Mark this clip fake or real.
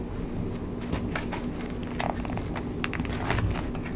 real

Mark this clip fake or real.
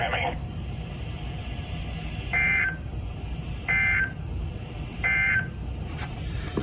fake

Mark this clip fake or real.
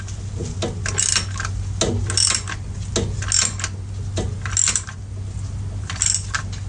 real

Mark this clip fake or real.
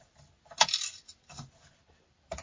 fake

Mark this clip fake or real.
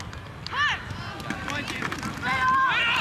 real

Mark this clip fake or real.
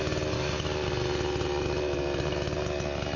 real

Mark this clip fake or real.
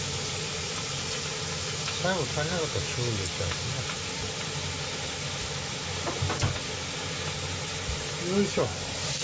real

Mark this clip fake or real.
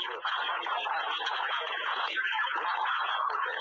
fake